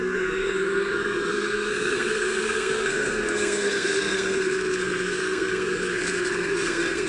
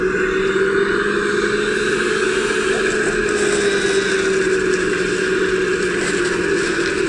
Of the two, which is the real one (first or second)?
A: second